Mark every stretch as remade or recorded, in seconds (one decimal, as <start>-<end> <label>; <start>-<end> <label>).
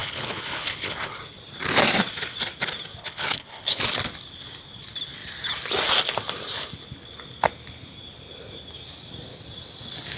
0.0-1.2 remade; 1.2-3.0 recorded; 3.0-3.8 remade; 3.8-10.2 recorded